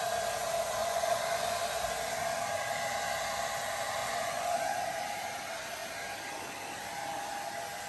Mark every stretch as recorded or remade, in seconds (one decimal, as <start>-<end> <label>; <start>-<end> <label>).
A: 0.0-0.8 recorded; 0.8-1.6 remade; 1.6-4.0 recorded; 4.0-4.7 remade; 4.7-7.9 recorded